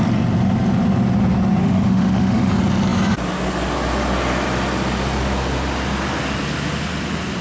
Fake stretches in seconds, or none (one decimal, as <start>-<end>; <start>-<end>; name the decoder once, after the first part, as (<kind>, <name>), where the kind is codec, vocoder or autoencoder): 1.6-2.5 (autoencoder, DAC-VAE)